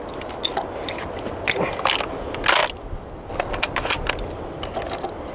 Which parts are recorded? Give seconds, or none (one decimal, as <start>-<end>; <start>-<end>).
0.0-5.3